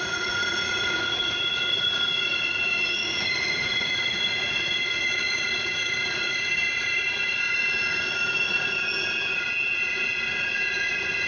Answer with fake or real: fake